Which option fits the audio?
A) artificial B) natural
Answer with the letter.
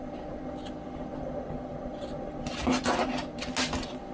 B